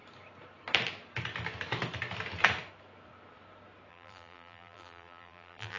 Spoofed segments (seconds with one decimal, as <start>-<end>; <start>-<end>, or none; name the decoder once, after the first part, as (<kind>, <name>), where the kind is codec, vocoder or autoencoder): 3.9-5.8 (vocoder, BigVGAN v2)